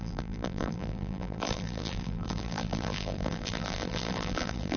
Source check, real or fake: fake